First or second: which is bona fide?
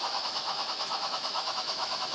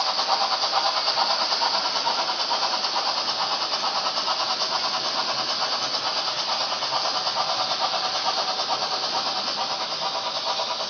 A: second